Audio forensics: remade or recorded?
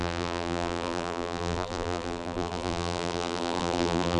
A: remade